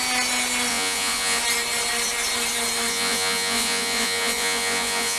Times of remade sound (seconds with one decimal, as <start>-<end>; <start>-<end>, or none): 0.7-1.4; 2.9-5.2